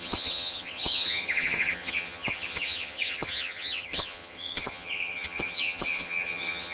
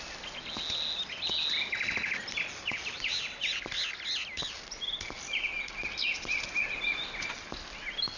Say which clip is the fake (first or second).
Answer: first